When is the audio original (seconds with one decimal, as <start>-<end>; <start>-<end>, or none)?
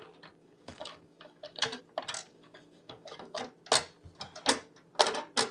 0.0-0.4; 1.8-2.3; 3.4-5.5